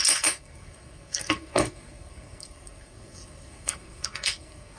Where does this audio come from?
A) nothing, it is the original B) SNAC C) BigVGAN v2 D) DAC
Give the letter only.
B